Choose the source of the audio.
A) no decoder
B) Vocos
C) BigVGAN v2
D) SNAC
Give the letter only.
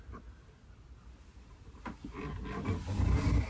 A